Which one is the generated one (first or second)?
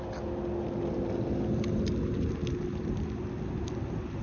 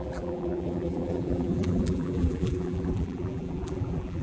second